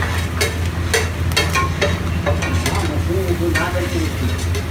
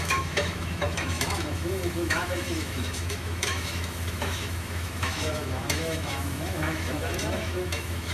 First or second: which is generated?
second